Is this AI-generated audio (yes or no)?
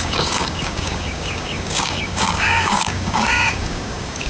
yes